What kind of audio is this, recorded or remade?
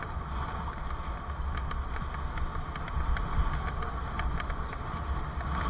recorded